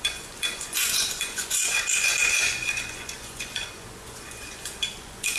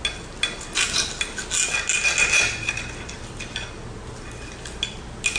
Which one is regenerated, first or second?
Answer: first